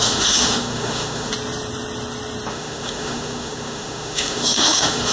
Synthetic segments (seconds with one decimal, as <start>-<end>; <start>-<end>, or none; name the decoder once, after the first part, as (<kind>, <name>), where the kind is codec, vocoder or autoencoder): 0.0-1.3 (autoencoder, DAC-VAE); 2.5-5.1